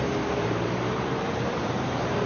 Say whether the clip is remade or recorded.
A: remade